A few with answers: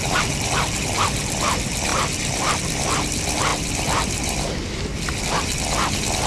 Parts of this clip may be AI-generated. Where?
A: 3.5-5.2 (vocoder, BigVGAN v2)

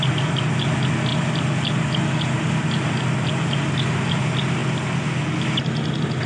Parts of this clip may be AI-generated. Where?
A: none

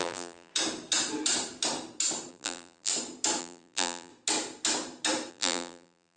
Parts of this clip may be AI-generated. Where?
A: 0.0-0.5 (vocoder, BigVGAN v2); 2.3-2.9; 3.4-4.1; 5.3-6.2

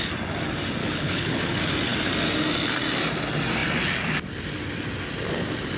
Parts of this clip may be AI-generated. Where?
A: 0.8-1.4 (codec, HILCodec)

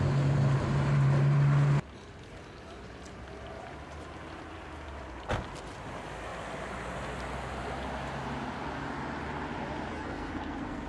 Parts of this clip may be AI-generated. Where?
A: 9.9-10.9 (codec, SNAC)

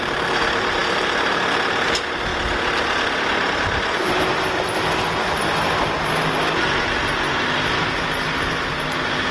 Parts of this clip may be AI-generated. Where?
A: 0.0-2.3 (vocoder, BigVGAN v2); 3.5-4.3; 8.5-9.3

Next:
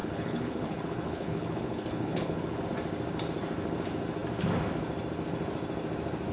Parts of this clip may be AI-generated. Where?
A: 0.0-2.6 (codec, HILCodec)